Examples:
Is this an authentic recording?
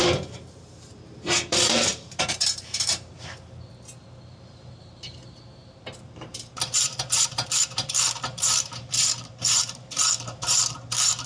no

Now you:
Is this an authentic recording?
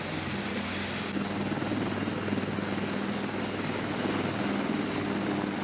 yes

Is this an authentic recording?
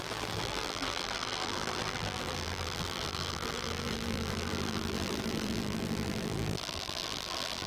no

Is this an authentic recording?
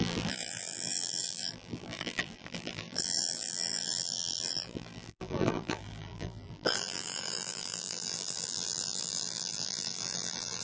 no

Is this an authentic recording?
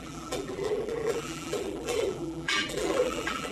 no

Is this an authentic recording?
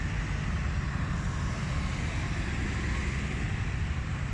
yes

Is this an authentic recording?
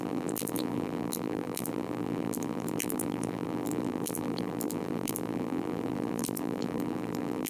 no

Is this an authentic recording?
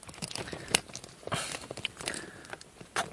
yes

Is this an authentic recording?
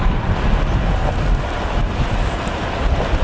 yes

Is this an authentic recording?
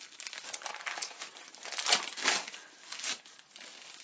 yes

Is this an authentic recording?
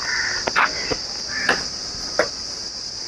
yes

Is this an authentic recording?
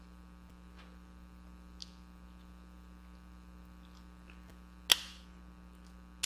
yes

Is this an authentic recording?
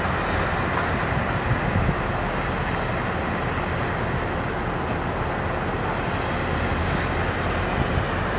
yes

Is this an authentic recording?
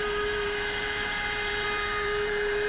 no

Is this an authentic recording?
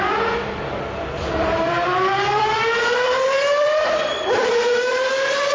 no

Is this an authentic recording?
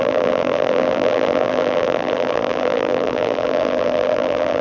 no